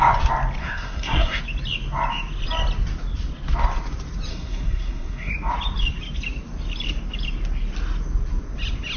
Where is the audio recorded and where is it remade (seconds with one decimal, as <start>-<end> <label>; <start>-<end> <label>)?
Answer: 0.0-0.6 recorded; 0.6-1.4 remade; 1.4-4.3 recorded; 4.3-5.3 remade; 5.3-9.0 recorded